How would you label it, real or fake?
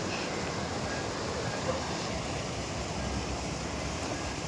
real